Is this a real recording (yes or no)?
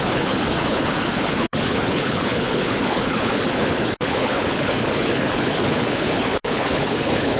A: no